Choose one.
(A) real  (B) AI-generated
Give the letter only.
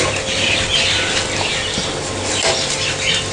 A